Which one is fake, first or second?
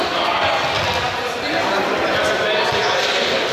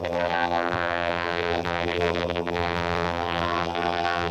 second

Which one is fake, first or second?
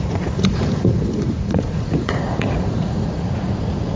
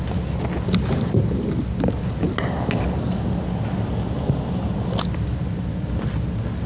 first